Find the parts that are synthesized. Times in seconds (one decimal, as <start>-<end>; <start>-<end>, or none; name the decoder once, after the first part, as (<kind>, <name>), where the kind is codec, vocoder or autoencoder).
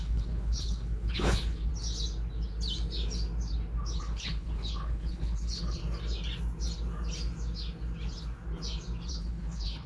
0.0-1.7 (codec, HILCodec); 4.0-5.8; 9.1-9.9